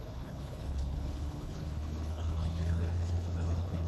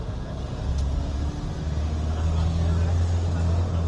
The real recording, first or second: second